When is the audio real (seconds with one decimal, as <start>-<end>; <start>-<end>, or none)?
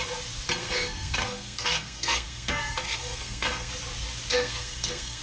0.0-0.6; 3.7-4.3